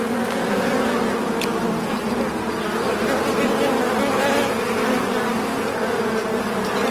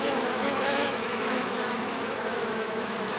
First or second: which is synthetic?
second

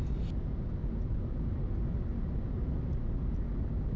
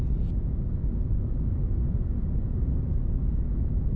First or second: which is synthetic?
second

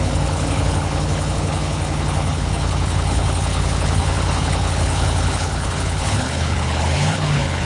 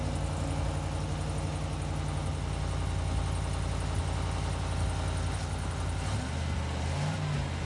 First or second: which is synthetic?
first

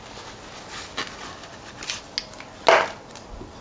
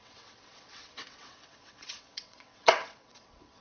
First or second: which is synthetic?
second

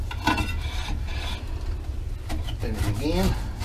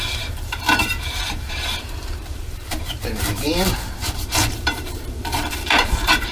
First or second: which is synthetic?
second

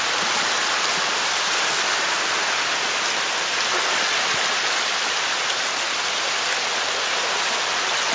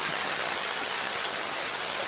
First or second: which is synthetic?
second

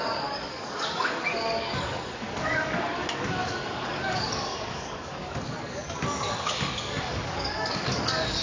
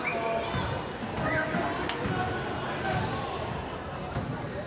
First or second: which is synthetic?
first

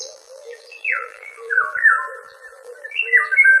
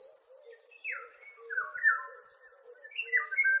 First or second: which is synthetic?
first